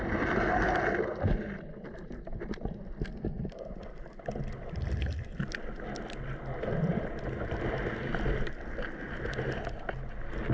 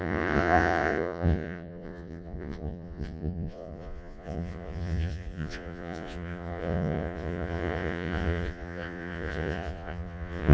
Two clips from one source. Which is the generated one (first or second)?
second